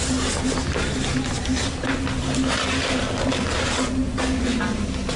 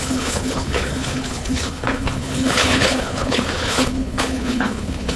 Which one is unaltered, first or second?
first